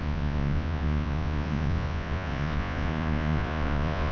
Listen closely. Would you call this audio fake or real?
fake